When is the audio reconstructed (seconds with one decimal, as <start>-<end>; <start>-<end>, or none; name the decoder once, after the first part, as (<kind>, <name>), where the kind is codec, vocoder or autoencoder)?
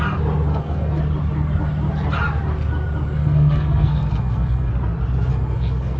0.5-1.0 (codec, SNAC); 3.2-4.7; 5.3-6.0